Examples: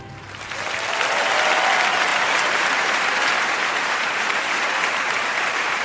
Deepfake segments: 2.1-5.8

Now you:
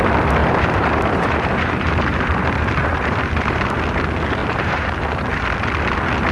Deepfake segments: 0.4-3.7; 4.4-5.4

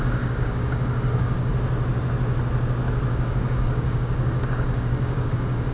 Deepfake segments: 0.0-1.5; 3.1-5.7

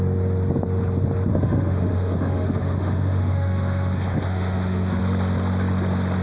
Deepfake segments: 1.3-5.0

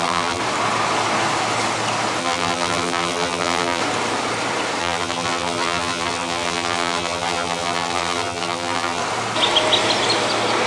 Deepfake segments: 0.0-0.4; 2.2-3.8; 4.8-9.0

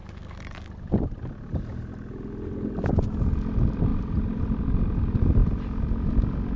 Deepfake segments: none

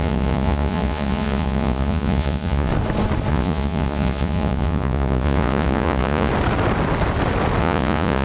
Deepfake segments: 0.0-2.7; 3.3-6.3; 7.6-8.2